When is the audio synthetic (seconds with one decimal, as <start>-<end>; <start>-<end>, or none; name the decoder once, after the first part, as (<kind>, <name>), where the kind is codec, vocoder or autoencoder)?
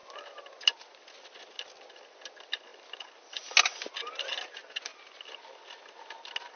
none